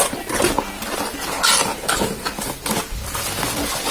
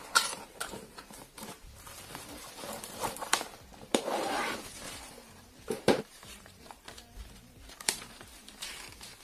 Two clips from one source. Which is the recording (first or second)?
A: first